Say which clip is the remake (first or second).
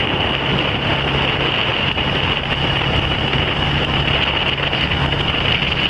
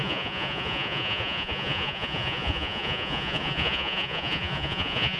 second